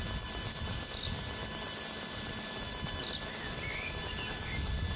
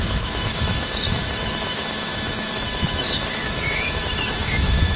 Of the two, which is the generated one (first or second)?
second